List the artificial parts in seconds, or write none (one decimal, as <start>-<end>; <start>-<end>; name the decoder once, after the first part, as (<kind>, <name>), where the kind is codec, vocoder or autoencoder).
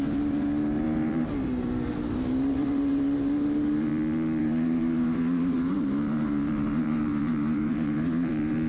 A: 0.0-3.9 (vocoder, BigVGAN v2); 4.4-8.7